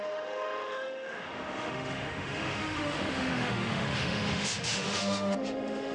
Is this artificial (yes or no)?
yes